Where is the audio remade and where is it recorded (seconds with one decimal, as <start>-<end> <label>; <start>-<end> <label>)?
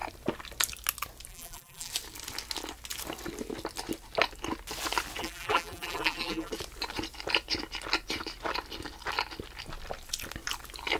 0.0-1.3 recorded; 1.3-1.9 remade; 1.9-5.2 recorded; 5.2-6.5 remade; 6.5-11.0 recorded